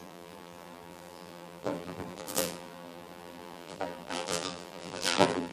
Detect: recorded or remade remade